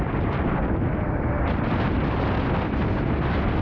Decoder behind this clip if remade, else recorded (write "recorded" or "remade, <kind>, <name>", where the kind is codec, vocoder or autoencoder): recorded